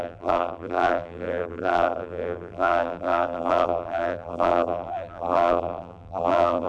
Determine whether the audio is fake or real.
fake